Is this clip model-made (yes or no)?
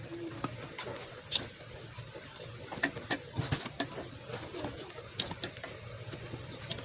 no